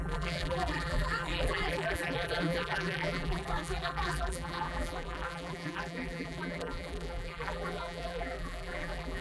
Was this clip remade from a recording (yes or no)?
yes